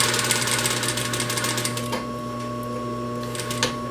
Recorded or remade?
recorded